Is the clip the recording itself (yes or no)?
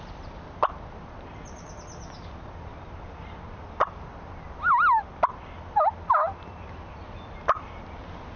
yes